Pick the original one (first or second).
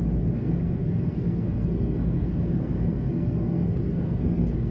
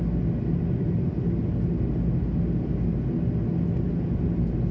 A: second